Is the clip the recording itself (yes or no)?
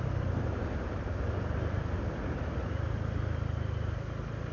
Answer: yes